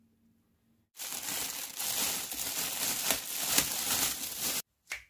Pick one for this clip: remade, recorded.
recorded